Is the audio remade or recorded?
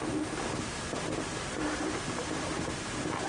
recorded